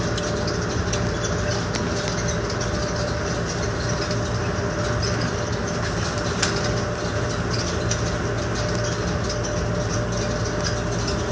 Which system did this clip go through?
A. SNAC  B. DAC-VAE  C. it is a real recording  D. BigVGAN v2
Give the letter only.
C